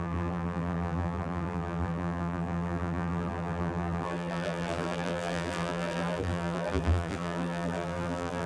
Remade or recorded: remade